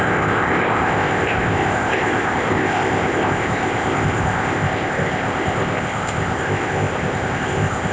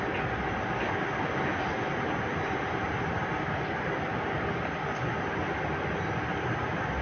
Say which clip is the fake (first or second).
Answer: first